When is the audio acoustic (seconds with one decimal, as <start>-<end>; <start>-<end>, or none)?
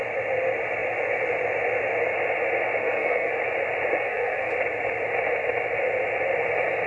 0.0-2.8; 3.3-3.9; 4.5-6.9